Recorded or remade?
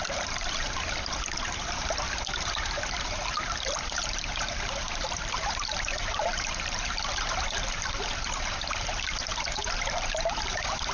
remade